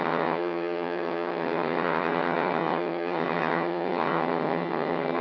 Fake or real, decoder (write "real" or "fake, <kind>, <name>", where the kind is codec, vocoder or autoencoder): fake, vocoder, HiFi-GAN